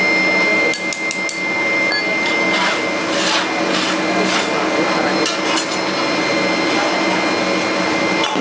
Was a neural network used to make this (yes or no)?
no